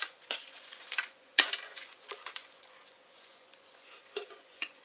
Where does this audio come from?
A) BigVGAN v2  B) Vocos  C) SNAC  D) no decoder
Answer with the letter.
B